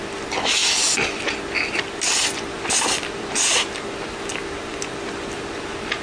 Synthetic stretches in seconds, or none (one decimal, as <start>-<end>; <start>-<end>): none